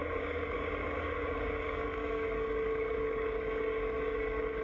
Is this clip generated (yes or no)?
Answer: yes